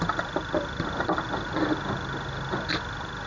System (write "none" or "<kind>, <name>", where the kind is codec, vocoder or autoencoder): none